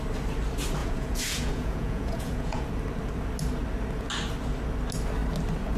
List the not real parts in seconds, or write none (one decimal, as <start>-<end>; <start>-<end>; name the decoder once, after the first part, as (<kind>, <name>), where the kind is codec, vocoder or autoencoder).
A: 0.8-2.7 (vocoder, Vocos)